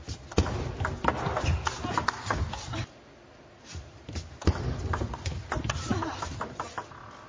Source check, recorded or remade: recorded